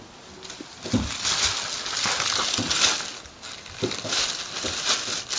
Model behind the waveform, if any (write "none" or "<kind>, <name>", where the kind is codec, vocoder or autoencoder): none